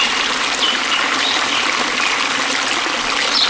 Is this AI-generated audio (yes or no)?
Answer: no